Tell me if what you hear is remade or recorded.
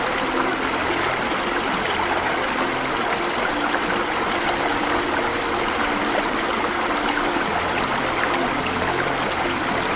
recorded